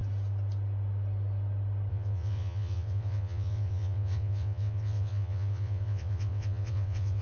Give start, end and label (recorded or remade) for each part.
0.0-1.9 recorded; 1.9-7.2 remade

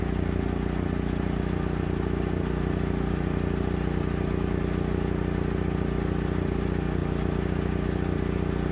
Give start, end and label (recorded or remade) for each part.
0.0-8.7 recorded